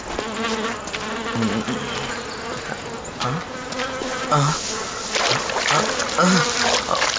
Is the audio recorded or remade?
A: recorded